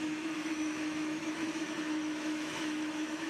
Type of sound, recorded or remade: remade